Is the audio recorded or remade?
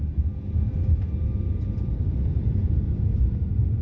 recorded